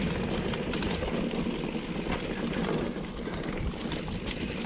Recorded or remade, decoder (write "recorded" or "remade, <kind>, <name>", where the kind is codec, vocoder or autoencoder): recorded